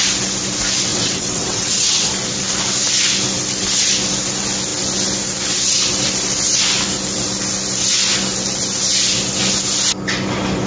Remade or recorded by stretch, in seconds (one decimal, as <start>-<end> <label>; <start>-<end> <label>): 0.0-0.9 recorded; 0.9-2.1 remade; 2.1-10.7 recorded